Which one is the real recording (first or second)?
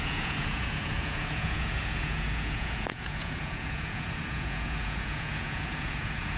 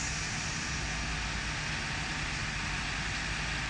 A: second